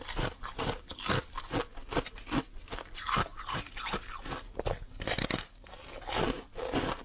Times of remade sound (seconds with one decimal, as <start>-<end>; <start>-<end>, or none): none